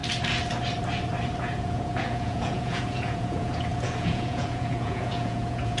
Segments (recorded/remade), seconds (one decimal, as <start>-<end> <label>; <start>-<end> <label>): 0.0-1.4 recorded; 1.4-5.8 remade